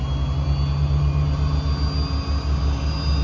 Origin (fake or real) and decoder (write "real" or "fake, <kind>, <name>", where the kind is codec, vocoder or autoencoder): real